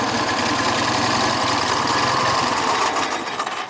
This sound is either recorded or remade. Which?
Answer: recorded